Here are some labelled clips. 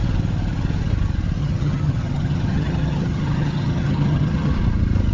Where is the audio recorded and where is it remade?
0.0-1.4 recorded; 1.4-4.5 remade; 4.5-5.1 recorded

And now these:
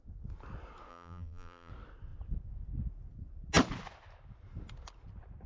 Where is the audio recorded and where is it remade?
0.0-0.9 recorded; 0.9-1.7 remade; 1.7-5.5 recorded

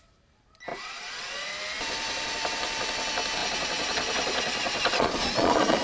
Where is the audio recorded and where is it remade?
0.0-0.7 recorded; 0.7-1.5 remade; 1.5-3.4 recorded; 3.4-5.8 remade